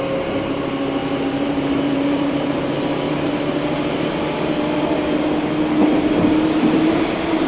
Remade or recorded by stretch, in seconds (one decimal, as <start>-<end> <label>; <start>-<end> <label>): 0.0-1.0 recorded; 1.0-4.2 remade; 4.2-5.8 recorded; 5.8-7.5 remade